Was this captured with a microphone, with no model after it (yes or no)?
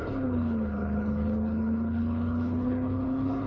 no